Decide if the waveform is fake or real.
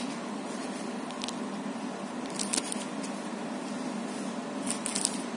real